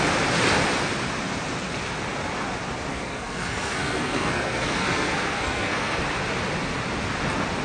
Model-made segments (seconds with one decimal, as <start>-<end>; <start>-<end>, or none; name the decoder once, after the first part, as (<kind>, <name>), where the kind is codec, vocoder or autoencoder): 2.9-6.0 (codec, SNAC)